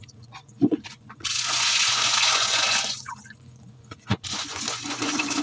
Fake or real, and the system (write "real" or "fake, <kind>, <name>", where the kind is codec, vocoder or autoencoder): fake, vocoder, Vocos